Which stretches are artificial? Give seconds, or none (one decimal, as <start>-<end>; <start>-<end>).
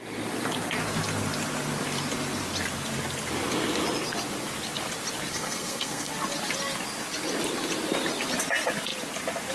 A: 5.3-6.1